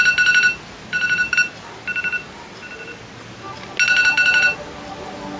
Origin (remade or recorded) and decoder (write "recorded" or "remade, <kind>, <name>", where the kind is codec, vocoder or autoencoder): recorded